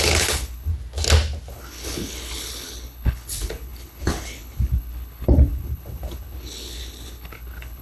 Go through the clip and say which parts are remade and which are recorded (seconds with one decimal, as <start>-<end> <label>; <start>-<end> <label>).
0.0-0.7 remade; 0.7-1.5 recorded; 1.5-7.8 remade